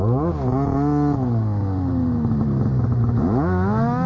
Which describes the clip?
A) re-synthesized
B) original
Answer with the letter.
B